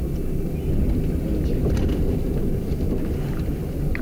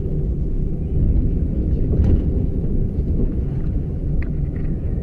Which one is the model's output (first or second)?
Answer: second